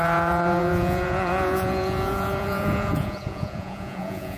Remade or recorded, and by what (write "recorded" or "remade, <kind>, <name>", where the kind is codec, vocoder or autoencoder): remade, vocoder, Vocos